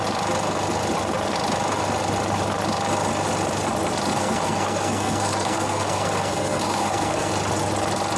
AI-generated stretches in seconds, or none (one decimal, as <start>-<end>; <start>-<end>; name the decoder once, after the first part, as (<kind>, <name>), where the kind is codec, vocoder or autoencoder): 4.1-7.3 (codec, SNAC)